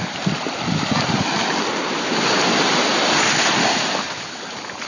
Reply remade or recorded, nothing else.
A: recorded